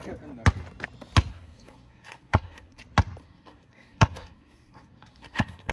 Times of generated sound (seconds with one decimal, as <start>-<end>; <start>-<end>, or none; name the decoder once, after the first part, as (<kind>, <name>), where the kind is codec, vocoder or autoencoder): 1.3-2.8 (codec, SNAC); 3.2-5.7